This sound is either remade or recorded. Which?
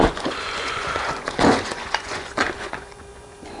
remade